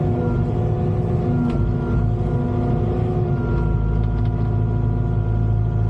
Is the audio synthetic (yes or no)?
no